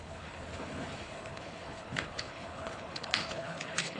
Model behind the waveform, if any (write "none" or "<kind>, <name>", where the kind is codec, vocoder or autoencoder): codec, HILCodec